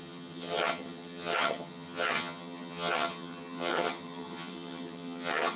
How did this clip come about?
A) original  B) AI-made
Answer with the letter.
B